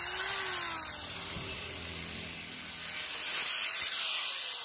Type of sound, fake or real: real